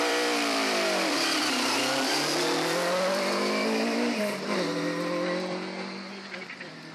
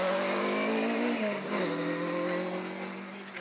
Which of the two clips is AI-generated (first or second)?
first